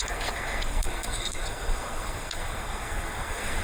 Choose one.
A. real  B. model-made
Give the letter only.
B